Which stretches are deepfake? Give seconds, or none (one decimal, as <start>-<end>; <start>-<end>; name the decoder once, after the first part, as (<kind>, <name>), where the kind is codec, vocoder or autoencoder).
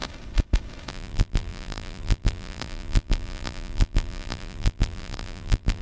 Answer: 0.9-5.8 (vocoder, BigVGAN v2)